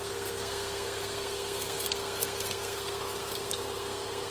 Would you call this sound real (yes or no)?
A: no